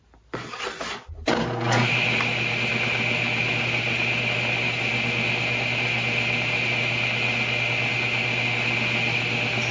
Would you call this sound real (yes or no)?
yes